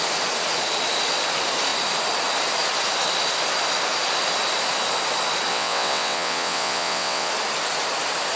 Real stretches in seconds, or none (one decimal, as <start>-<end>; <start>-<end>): 0.0-5.5; 7.3-8.4